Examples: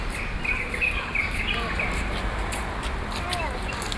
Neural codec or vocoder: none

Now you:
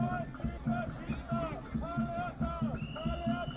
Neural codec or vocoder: none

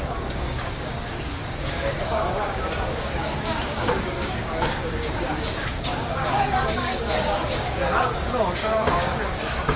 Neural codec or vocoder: codec, DAC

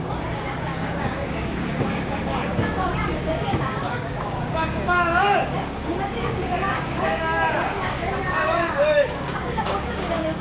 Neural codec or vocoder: codec, DAC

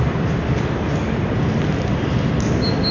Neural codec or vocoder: none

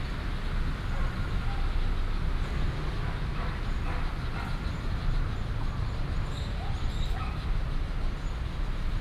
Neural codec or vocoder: none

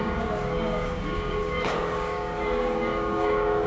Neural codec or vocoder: codec, DAC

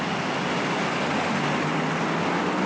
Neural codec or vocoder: none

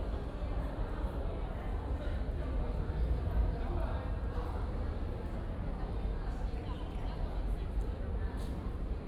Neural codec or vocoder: none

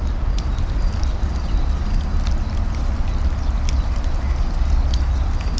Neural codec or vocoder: none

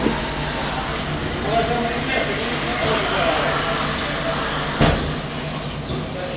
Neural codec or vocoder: none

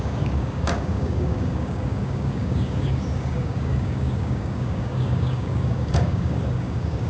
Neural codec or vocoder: codec, DAC